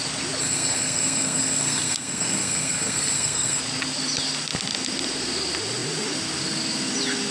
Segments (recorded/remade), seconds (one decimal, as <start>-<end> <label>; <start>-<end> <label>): 0.0-0.4 recorded; 0.4-3.6 remade; 3.6-7.3 recorded